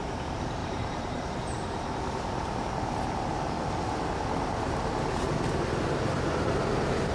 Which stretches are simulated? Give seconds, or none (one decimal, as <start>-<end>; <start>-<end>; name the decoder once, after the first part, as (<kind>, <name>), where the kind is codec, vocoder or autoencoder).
0.0-3.3 (vocoder, BigVGAN v2); 6.1-7.1